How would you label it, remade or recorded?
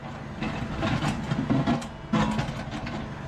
recorded